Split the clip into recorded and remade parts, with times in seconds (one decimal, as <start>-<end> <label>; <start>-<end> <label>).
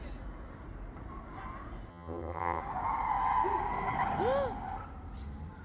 0.0-1.9 recorded; 1.9-2.6 remade; 2.6-5.6 recorded